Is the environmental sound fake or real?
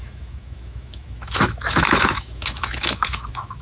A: fake